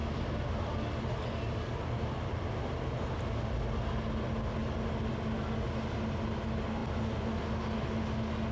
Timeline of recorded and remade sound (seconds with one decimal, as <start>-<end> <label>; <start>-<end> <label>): 0.0-8.5 recorded

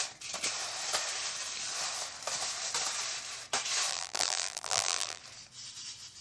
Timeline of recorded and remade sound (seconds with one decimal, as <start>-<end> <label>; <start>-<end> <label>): 0.0-3.9 recorded; 3.9-5.2 remade; 5.2-6.2 recorded